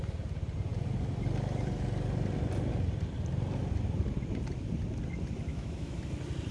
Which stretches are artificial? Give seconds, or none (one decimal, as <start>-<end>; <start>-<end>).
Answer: 5.5-6.0